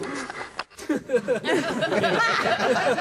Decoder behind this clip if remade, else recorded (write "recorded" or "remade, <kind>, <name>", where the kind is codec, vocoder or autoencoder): recorded